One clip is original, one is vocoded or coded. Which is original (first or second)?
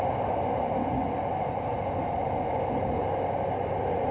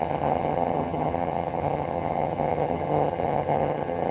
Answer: first